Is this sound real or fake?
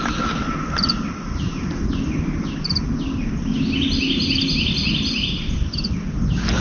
real